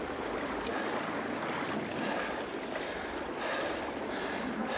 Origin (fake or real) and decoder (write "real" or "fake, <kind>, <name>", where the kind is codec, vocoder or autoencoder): real